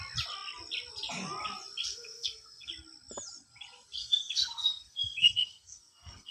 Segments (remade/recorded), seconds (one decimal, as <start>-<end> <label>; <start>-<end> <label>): 0.0-1.9 recorded; 1.9-2.7 remade; 2.7-4.0 recorded; 4.0-6.3 remade

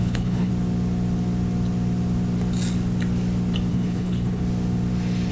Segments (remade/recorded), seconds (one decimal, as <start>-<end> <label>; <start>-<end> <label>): 0.0-0.5 remade; 0.5-3.7 recorded; 3.7-4.4 remade; 4.4-5.3 recorded

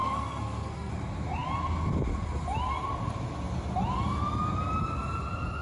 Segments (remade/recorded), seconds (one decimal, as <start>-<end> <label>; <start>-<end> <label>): 0.0-0.9 remade; 0.9-5.6 recorded

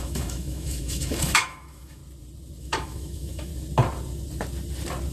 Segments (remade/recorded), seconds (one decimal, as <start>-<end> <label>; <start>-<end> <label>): 0.0-2.0 remade; 2.0-2.6 recorded; 2.6-3.5 remade; 3.5-5.1 recorded

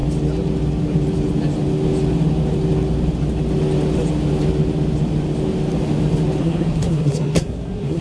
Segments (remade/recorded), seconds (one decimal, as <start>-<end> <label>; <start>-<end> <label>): 0.0-6.4 recorded; 6.4-8.0 remade

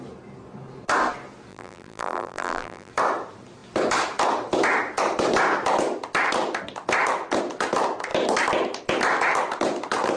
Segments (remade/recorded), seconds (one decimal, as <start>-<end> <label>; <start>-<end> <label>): 0.0-1.5 recorded; 1.5-2.9 remade; 2.9-10.2 recorded

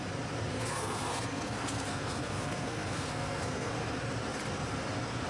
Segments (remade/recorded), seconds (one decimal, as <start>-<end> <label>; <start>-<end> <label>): 0.0-0.5 recorded; 0.5-3.7 remade; 3.7-5.3 recorded